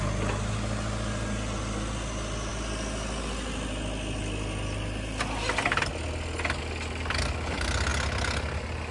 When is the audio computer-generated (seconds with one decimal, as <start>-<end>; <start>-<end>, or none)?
none